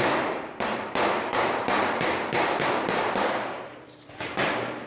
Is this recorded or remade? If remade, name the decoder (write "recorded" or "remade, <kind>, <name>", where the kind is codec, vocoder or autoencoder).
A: remade, vocoder, BigVGAN v2